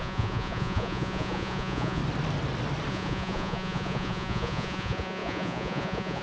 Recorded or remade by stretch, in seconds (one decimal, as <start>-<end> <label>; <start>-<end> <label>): 0.0-2.0 remade; 2.0-2.9 recorded; 2.9-6.2 remade

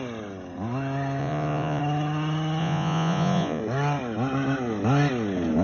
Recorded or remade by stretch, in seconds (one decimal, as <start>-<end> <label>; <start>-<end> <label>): 0.0-1.2 recorded; 1.2-1.8 remade; 1.8-2.6 recorded; 2.6-3.6 remade; 3.6-5.6 recorded

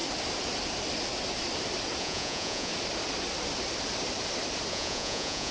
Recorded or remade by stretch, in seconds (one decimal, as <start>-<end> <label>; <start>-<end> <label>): 0.0-2.0 recorded; 2.0-2.7 remade; 2.7-4.7 recorded; 4.7-5.5 remade

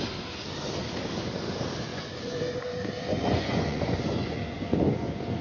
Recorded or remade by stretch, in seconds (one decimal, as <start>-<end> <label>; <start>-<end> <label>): 0.0-1.9 recorded; 1.9-2.6 remade; 2.6-3.1 recorded; 3.1-5.4 remade

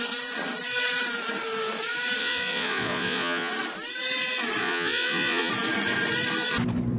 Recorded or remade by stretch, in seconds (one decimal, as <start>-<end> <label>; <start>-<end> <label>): 0.0-2.2 recorded; 2.2-3.5 remade; 3.5-4.6 recorded; 4.6-5.5 remade; 5.5-7.0 recorded

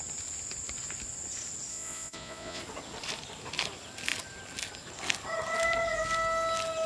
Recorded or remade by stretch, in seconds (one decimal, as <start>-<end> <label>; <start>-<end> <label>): 0.0-1.7 recorded; 1.7-2.6 remade; 2.6-6.9 recorded

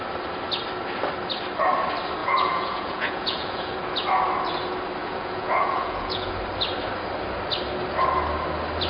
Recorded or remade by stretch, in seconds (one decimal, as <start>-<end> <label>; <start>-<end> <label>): 0.0-2.2 recorded; 2.2-3.8 remade; 3.8-5.0 recorded; 5.0-6.3 remade; 6.3-8.9 recorded

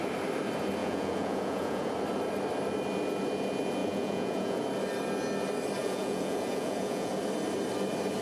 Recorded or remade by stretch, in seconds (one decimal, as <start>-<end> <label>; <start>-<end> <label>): 0.0-0.8 recorded; 0.8-1.9 remade; 1.9-3.8 recorded; 3.8-4.6 remade; 4.6-5.8 recorded; 5.8-7.2 remade; 7.2-8.2 recorded